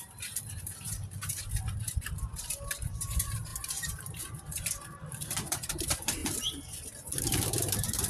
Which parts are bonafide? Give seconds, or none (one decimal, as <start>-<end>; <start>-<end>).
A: 6.2-7.2